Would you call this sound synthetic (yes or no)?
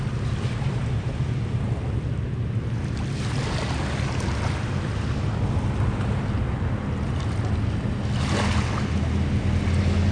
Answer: no